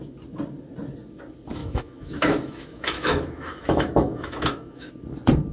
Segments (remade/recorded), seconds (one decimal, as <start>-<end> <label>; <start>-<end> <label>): 0.0-1.6 recorded; 1.6-4.9 remade; 4.9-5.5 recorded